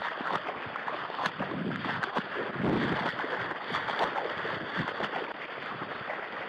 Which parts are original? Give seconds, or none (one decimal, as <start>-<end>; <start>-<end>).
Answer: 0.0-6.5